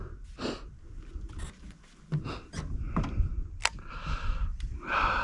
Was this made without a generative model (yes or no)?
yes